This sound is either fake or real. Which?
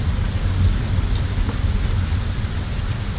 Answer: real